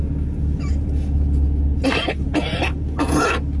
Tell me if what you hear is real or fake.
real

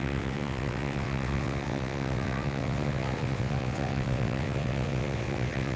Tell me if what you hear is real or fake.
fake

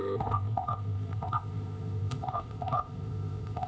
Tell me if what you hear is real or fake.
fake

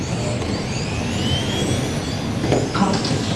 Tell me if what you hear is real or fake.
real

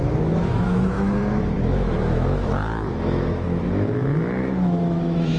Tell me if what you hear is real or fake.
fake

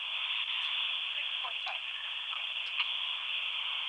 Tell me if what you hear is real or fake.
real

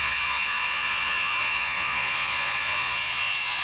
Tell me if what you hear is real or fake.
fake